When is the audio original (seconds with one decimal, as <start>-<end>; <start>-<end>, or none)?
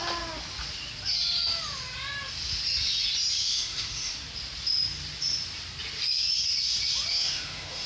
0.0-3.4; 4.1-7.1